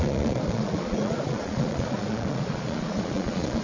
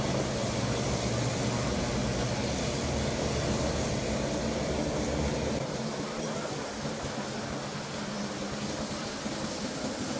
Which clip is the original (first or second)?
second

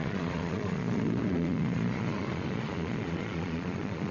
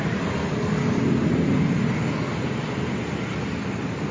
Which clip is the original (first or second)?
second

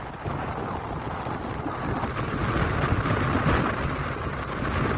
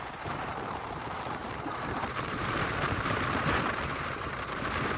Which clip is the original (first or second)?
first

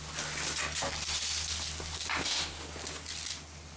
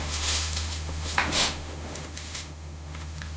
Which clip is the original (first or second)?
first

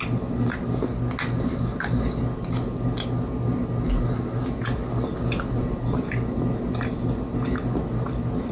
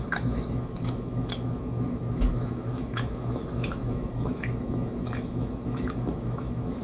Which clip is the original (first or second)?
first